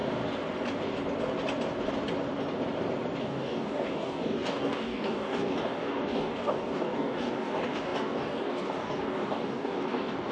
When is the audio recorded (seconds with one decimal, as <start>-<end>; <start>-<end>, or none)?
0.0-3.2